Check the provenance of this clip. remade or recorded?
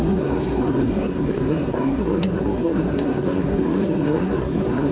remade